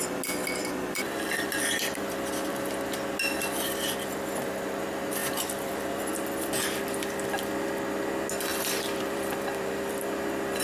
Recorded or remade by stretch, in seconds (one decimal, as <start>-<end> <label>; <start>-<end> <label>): 0.0-0.6 recorded; 0.6-2.5 remade; 2.5-5.2 recorded; 5.2-7.2 remade; 7.2-8.5 recorded; 8.5-10.6 remade